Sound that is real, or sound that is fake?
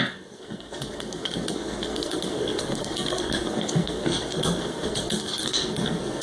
fake